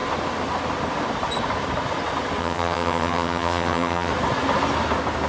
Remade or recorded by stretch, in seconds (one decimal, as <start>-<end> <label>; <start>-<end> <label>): 0.0-2.4 recorded; 2.4-4.1 remade; 4.1-5.3 recorded

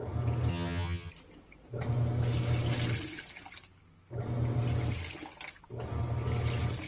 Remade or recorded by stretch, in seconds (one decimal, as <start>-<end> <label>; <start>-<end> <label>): 0.0-0.5 recorded; 0.5-1.1 remade; 1.1-6.9 recorded